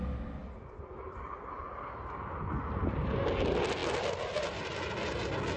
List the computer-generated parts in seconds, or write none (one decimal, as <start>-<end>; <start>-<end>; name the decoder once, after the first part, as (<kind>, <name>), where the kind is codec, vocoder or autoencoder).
none